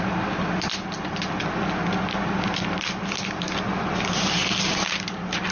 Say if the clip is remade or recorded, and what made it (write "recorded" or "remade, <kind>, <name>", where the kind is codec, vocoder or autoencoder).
recorded